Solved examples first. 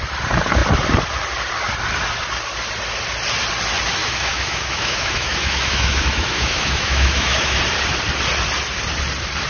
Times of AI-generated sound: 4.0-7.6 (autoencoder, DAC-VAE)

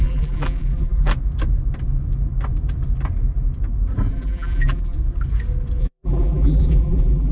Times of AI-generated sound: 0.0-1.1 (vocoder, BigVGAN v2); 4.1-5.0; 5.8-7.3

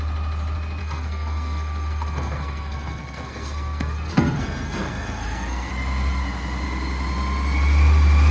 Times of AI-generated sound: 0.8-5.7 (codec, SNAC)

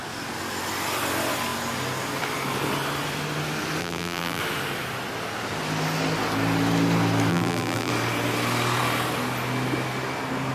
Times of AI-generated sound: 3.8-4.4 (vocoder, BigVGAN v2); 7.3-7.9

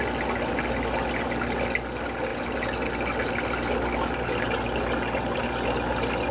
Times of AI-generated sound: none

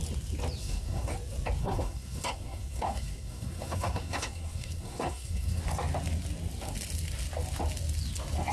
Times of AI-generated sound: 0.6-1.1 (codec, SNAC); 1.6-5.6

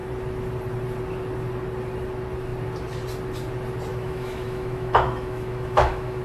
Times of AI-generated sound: 3.9-6.2 (autoencoder, DAC-VAE)

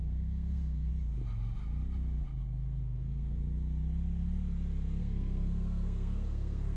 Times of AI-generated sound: 0.0-0.9 (codec, SNAC); 2.4-3.4; 5.0-6.8